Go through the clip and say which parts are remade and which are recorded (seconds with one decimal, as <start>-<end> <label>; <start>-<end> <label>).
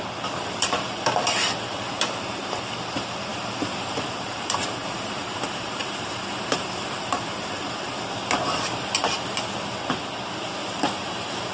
0.0-3.3 recorded; 3.3-7.8 remade; 7.8-10.6 recorded; 10.6-11.5 remade